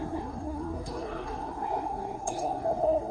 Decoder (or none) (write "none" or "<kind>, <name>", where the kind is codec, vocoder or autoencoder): codec, SNAC